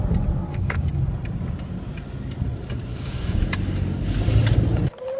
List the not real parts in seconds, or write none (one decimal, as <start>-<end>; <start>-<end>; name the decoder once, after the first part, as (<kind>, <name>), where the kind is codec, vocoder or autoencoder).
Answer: 0.5-1.0 (codec, DAC); 2.9-3.4